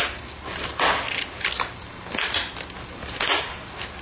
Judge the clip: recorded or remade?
recorded